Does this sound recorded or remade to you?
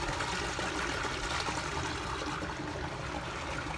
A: recorded